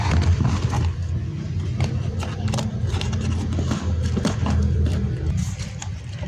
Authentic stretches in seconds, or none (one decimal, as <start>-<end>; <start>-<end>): 1.0-1.9